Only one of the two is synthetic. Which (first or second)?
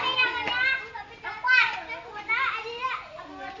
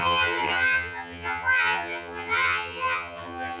second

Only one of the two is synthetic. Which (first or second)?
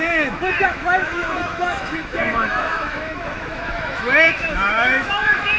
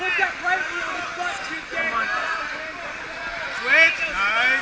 first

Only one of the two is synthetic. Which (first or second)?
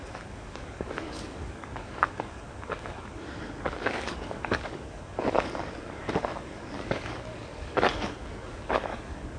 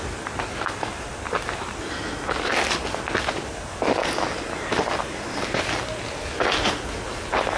first